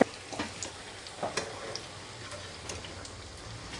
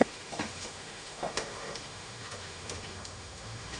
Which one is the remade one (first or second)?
second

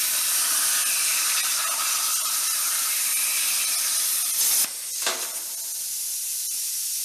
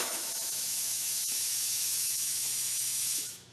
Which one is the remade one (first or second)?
second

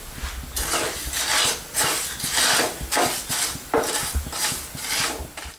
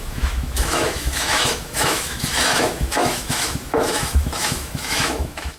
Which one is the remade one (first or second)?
second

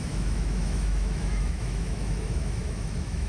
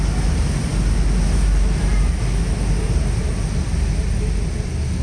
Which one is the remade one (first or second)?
first